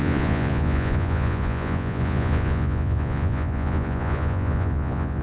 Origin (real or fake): fake